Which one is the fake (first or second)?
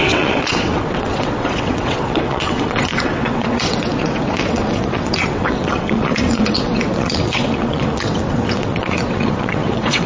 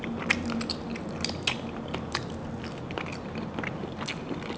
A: first